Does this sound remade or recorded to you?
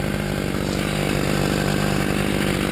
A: recorded